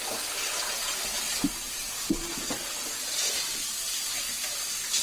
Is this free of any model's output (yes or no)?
yes